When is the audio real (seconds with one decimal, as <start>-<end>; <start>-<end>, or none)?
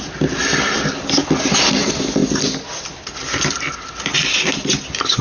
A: 0.0-5.2